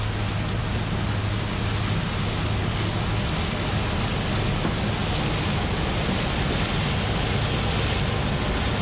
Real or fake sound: real